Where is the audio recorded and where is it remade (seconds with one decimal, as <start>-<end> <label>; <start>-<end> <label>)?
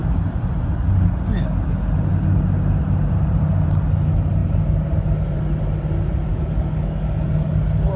0.0-6.3 recorded; 6.3-7.5 remade; 7.5-8.0 recorded